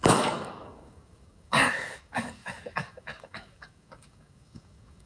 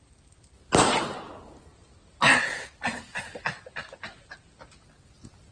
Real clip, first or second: second